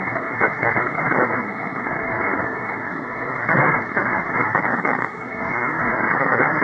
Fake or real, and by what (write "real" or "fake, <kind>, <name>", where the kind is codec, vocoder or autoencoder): fake, codec, SNAC